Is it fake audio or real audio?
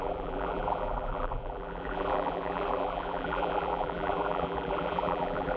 fake